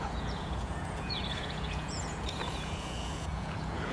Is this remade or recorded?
remade